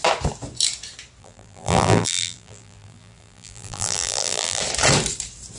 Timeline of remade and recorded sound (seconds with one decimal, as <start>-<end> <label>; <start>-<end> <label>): 0.0-1.2 recorded; 1.2-4.6 remade; 4.6-5.6 recorded